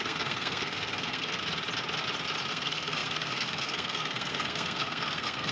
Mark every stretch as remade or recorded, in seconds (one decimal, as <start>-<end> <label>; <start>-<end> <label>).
0.0-1.4 remade; 1.4-2.5 recorded; 2.5-5.5 remade